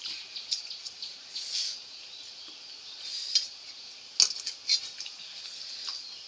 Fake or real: real